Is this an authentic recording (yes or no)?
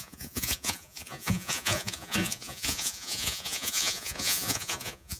no